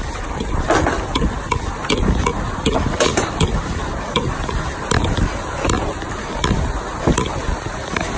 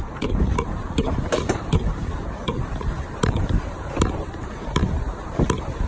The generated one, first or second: second